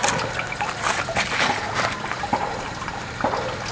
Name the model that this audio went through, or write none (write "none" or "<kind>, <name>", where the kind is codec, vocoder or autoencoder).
none